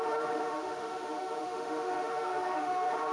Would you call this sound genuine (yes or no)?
no